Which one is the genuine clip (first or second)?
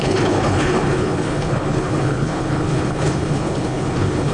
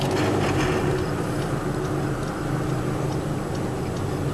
second